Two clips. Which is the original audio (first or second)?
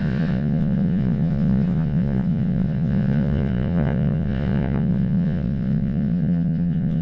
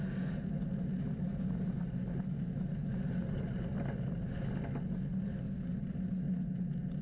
second